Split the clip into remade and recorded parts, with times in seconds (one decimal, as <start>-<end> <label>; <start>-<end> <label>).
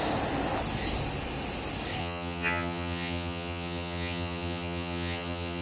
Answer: 0.0-2.0 recorded; 2.0-5.6 remade